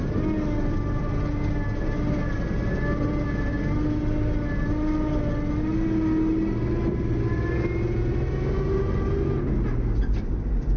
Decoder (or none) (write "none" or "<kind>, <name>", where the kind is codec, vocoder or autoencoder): none